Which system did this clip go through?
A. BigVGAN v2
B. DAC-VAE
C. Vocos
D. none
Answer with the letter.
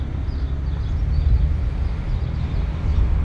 D